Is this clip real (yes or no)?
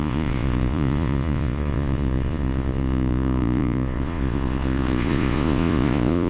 no